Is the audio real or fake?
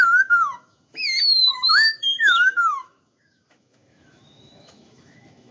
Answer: fake